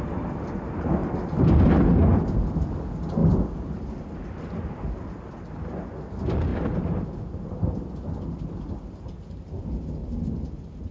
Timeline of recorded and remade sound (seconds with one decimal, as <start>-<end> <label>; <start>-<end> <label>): 0.0-1.0 recorded; 1.0-2.3 remade; 2.3-3.2 recorded; 3.2-4.4 remade; 4.4-6.5 recorded; 6.5-9.6 remade; 9.6-10.0 recorded; 10.0-10.9 remade

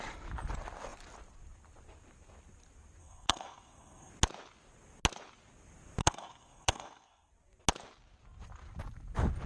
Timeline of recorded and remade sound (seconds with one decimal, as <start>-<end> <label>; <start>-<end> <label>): 0.0-3.0 recorded; 3.0-4.1 remade; 4.1-6.0 recorded; 6.0-7.3 remade; 7.3-9.5 recorded

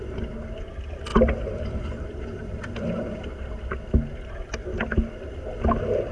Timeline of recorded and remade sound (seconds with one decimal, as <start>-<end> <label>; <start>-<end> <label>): 0.0-1.1 recorded; 1.1-3.3 remade; 3.3-6.1 recorded